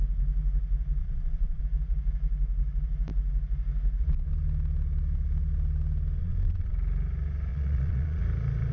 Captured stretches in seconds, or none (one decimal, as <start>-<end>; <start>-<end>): 0.0-1.0; 1.6-6.2; 6.7-7.5; 8.2-8.7